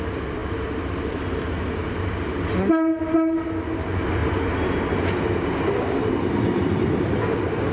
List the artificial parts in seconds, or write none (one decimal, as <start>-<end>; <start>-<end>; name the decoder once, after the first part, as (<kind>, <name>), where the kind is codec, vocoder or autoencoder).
none